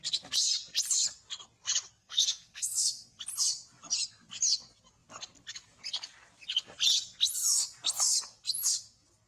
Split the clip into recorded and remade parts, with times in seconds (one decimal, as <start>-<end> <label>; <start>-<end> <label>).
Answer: 0.0-2.0 recorded; 2.0-3.2 remade; 3.2-9.3 recorded